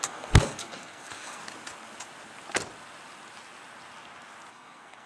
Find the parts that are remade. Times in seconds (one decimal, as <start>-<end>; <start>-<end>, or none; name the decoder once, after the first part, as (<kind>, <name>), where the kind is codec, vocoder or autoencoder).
0.0-1.4 (codec, SNAC); 4.5-5.1